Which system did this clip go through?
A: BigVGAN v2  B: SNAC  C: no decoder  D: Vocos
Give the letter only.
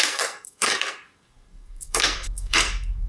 B